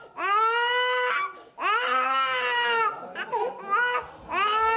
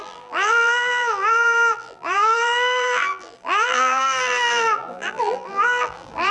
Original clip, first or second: first